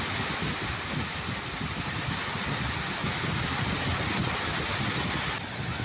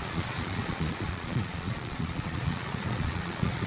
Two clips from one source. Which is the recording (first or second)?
first